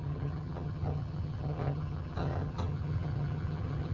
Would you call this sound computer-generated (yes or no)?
yes